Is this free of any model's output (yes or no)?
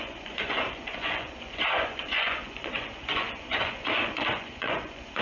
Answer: no